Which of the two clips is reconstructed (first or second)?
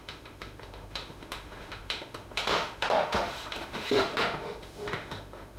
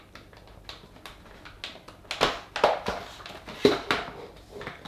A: first